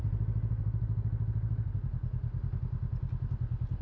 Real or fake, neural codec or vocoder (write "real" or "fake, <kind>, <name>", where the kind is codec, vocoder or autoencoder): real